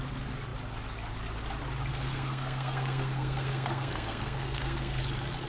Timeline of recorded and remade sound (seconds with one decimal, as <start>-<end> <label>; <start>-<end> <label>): 0.0-1.9 recorded; 1.9-5.0 remade; 5.0-5.5 recorded